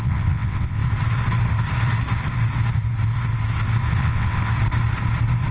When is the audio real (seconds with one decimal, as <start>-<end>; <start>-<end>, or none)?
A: 0.8-4.0; 4.5-5.5